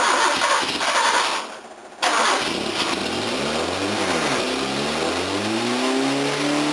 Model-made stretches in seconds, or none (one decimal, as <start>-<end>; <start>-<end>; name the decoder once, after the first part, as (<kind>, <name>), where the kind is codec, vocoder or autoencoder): none